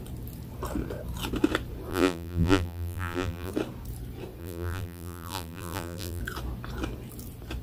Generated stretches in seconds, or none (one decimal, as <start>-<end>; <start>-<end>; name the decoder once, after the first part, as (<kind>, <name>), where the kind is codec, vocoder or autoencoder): 1.9-3.5 (vocoder, BigVGAN v2); 4.4-6.2